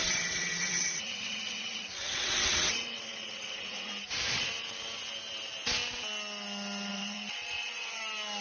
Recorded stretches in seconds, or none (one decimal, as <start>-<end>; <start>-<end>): 3.9-6.9; 8.0-8.4